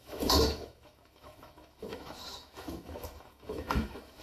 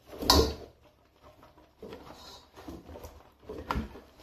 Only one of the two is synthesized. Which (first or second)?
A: first